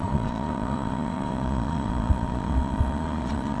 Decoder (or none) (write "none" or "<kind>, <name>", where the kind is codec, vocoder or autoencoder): vocoder, Vocos